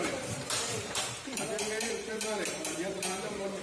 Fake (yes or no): yes